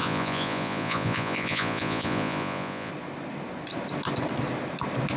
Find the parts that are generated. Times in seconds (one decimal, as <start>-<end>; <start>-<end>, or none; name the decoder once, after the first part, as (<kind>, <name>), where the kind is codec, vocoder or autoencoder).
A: 0.0-2.9 (vocoder, Vocos)